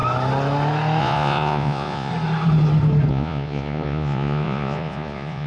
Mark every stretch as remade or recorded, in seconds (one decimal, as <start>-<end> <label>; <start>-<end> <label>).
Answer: 0.0-1.0 recorded; 1.0-2.1 remade; 2.1-3.1 recorded; 3.1-5.5 remade